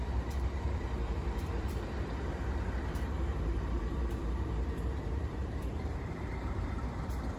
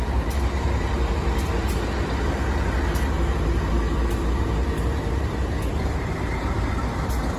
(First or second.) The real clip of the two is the second